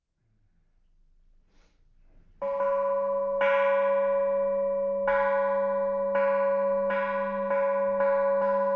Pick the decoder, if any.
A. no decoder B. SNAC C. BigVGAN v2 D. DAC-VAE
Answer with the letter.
A